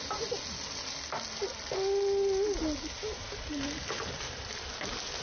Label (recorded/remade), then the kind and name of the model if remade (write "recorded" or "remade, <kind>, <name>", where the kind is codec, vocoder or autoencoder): recorded